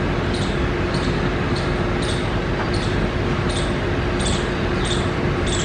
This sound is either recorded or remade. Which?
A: recorded